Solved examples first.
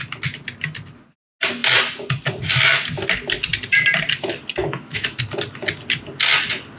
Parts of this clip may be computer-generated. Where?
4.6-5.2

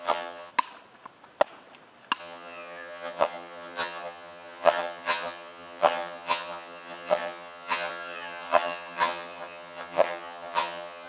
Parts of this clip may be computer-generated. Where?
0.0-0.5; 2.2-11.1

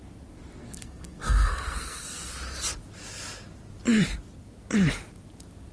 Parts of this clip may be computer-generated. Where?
0.6-2.3

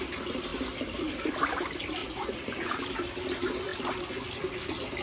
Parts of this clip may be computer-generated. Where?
2.0-2.8

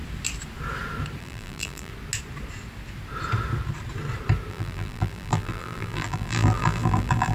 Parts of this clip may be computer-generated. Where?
1.2-1.9; 4.5-7.3

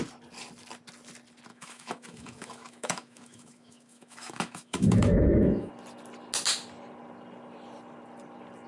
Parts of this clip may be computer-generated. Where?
1.5-5.7